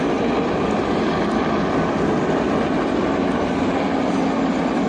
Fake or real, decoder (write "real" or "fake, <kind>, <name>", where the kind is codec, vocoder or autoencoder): real